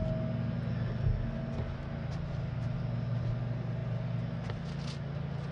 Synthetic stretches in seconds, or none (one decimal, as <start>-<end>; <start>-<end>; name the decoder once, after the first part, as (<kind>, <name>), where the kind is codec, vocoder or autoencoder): none

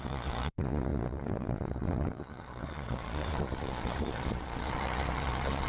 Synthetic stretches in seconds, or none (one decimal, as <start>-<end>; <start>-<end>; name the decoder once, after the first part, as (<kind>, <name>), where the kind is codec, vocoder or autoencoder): 0.0-5.7 (vocoder, Vocos)

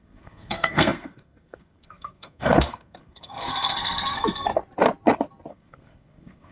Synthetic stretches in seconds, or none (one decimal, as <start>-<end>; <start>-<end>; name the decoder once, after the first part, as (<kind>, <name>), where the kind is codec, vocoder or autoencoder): 0.0-4.5 (codec, SNAC); 5.5-6.5